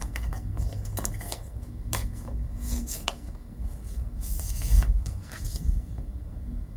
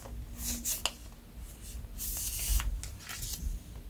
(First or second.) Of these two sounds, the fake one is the first